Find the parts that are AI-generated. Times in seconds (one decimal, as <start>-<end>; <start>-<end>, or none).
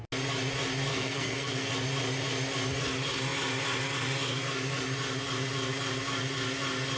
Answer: 0.9-1.7